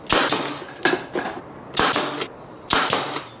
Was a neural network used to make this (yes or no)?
no